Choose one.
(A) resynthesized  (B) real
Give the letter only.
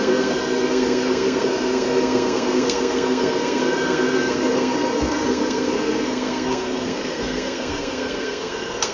A